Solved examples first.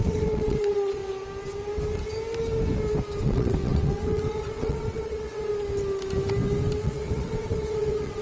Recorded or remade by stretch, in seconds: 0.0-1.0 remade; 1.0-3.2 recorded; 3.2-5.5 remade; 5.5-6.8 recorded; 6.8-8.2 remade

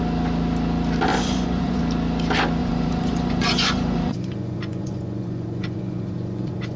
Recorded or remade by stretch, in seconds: 0.0-1.1 recorded; 1.1-1.8 remade; 1.8-2.6 recorded; 2.6-6.8 remade